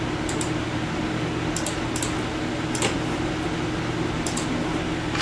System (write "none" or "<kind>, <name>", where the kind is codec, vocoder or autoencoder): none